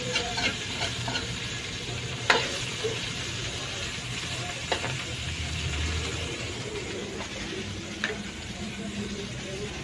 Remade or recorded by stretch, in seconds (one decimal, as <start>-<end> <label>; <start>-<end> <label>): 0.0-9.8 remade